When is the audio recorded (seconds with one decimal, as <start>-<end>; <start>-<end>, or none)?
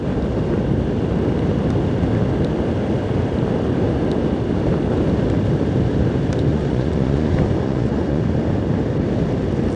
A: 0.0-6.5; 8.2-9.8